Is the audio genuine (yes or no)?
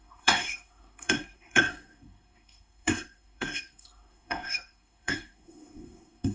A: no